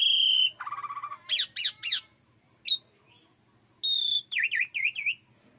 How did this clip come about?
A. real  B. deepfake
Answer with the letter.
A